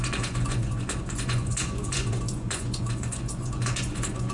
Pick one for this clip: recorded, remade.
remade